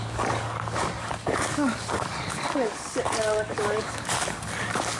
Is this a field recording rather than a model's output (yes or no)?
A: no